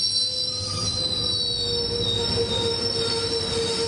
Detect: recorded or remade recorded